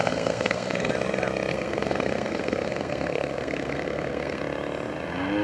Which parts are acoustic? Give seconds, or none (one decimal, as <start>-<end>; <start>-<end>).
0.9-1.5; 4.4-5.4